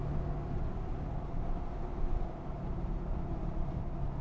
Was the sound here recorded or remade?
recorded